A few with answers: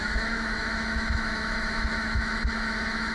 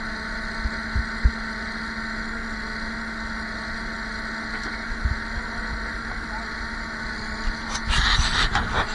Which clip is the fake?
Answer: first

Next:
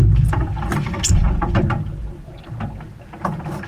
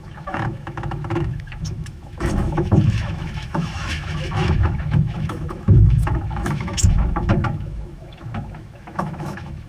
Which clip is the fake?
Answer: second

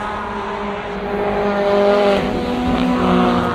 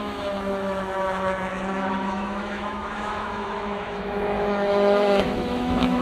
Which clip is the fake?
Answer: second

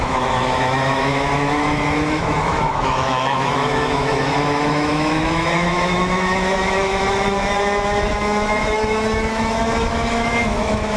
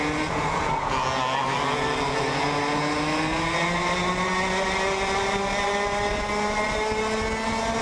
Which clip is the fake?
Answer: first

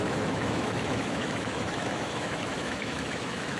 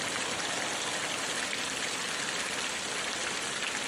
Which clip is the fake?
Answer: first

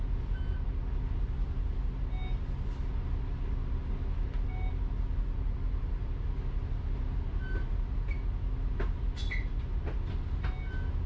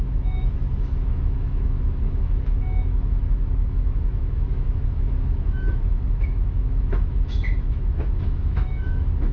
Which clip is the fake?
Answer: second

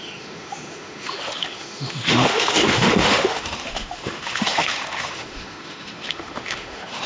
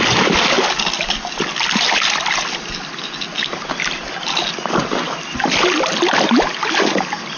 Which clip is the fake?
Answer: first